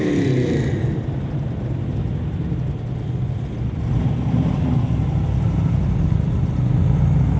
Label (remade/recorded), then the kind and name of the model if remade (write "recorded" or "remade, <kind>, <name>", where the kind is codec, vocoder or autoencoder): recorded